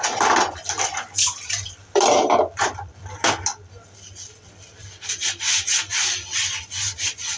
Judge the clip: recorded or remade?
recorded